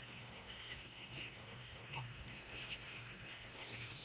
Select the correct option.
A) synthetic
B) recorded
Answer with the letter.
A